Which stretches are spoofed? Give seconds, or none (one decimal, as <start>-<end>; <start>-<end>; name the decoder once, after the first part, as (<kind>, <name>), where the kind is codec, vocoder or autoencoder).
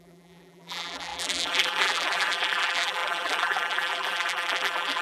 0.0-5.0 (vocoder, BigVGAN v2)